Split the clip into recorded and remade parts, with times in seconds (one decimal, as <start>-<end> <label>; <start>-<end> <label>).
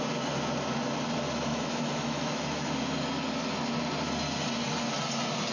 0.0-1.5 recorded; 1.5-2.7 remade; 2.7-5.5 recorded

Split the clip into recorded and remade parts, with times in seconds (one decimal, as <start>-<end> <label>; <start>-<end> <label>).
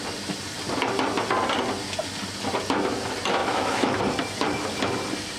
0.0-3.4 recorded; 3.4-4.0 remade; 4.0-5.4 recorded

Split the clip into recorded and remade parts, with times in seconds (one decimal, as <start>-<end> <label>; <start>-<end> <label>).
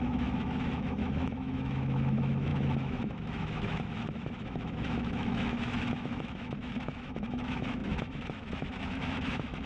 0.0-9.7 remade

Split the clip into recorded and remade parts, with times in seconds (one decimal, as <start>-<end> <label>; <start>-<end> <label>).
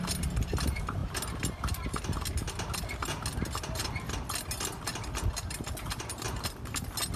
0.0-7.2 recorded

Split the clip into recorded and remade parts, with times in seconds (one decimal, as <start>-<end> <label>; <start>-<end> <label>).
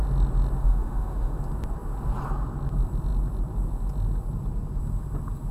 0.0-0.6 recorded; 0.6-1.4 remade; 1.4-5.5 recorded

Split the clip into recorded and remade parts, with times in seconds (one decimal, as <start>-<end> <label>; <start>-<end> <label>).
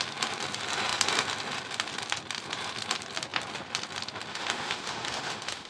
0.0-4.3 recorded; 4.3-5.7 remade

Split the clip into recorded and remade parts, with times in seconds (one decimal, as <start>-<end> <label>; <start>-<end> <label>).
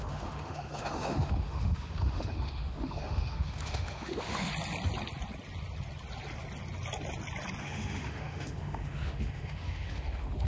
0.0-4.5 remade; 4.5-7.6 recorded; 7.6-10.5 remade